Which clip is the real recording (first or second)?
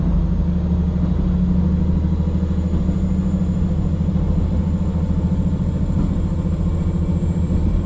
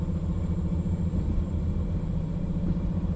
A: first